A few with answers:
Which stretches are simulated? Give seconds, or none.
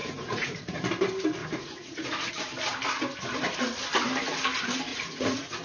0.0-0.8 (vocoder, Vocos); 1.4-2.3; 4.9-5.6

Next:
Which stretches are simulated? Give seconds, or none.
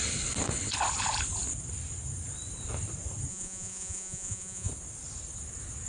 3.3-4.7 (vocoder, Vocos)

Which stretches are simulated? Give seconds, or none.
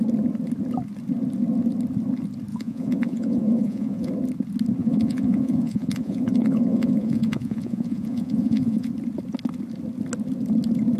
2.5-4.1 (vocoder, Vocos); 4.8-8.9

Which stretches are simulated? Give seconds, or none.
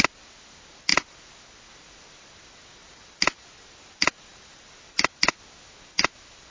none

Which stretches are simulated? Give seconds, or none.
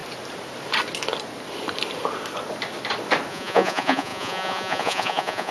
3.3-5.5 (vocoder, Vocos)